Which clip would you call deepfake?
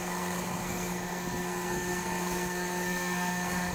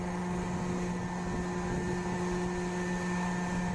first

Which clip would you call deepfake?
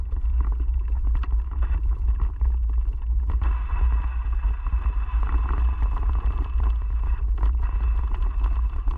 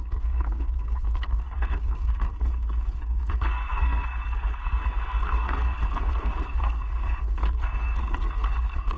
second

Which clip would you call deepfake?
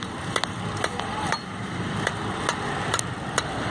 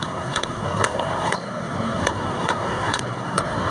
second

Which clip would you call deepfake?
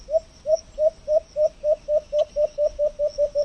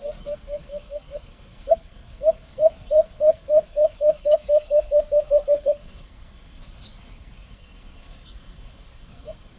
second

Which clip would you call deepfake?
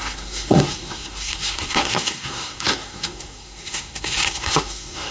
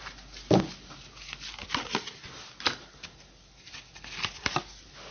first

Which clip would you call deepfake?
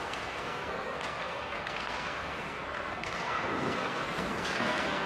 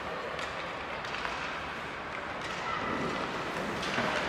first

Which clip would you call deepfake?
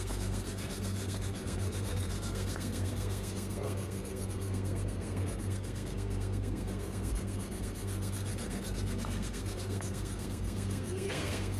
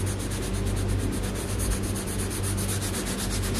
first